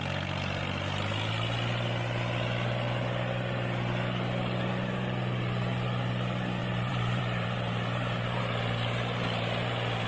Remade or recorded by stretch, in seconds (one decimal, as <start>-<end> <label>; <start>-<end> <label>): 0.0-6.6 recorded; 6.6-8.4 remade; 8.4-10.1 recorded